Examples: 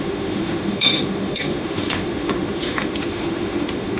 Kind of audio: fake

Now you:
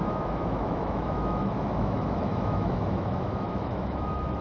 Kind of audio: fake